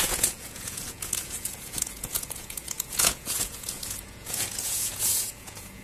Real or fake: fake